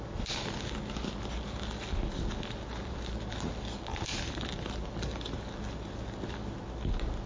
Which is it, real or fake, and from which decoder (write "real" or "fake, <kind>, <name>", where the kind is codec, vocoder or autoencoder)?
real